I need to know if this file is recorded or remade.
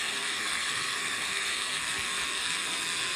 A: remade